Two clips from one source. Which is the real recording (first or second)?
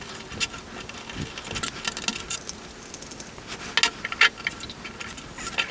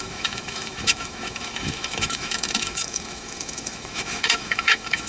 first